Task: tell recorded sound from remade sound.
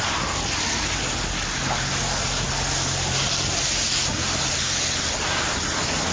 recorded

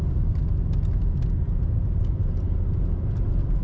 recorded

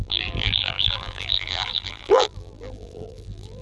remade